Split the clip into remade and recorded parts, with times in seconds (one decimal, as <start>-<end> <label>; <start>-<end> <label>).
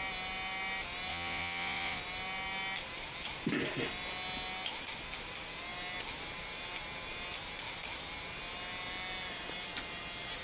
0.0-1.1 recorded; 1.1-2.0 remade; 2.0-10.4 recorded